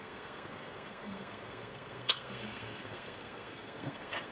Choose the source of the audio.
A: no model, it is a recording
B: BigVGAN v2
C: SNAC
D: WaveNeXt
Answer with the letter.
C